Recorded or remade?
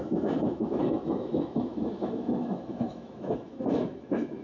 remade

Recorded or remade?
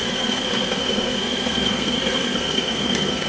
remade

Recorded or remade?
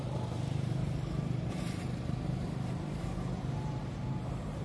remade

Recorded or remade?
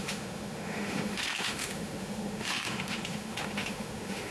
remade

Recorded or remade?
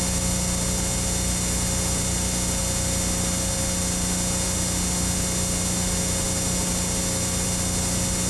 recorded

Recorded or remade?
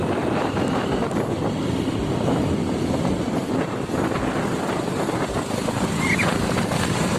recorded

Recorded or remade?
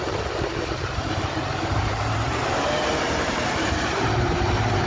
remade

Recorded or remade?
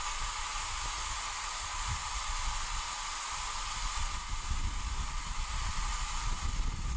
recorded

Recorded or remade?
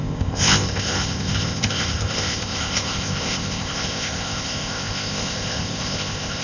remade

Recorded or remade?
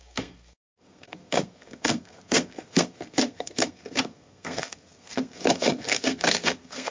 remade